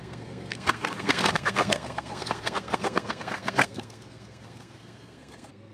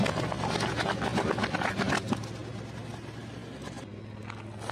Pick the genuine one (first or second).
second